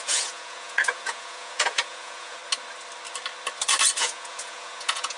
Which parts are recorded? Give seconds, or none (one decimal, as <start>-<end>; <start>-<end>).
2.4-4.0